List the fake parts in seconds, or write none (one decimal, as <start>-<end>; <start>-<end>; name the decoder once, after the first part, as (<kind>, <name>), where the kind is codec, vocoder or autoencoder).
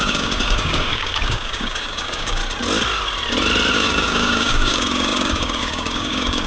0.0-2.4 (codec, DAC); 3.7-6.5